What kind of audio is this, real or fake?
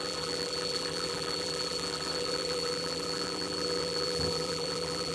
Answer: fake